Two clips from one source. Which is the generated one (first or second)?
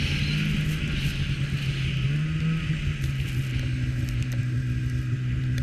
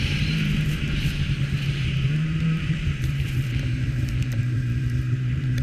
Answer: second